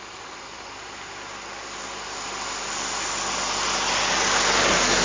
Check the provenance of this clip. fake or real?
real